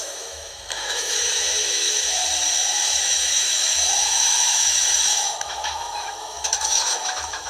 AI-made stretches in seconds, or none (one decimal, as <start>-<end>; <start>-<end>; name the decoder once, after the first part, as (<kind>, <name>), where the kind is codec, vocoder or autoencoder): 0.0-2.2 (autoencoder, DAC-VAE); 2.8-7.5